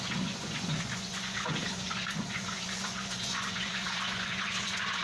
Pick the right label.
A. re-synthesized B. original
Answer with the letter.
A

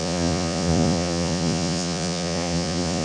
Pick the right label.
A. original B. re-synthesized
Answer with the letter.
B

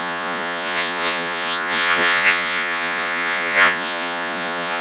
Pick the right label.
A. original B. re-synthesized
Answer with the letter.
B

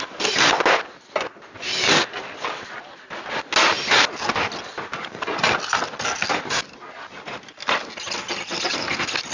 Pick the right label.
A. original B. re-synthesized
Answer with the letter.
A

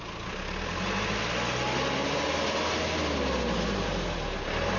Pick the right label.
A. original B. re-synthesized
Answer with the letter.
A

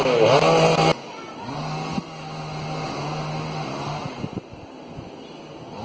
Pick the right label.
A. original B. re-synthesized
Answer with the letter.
A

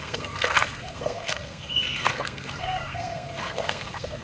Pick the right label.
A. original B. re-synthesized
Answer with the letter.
B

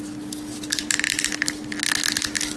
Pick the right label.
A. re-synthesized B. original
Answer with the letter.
B